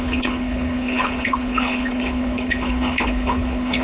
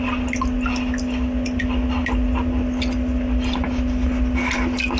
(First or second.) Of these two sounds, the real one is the second